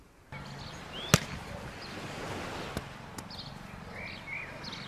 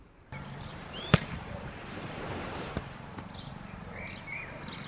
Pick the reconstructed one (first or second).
second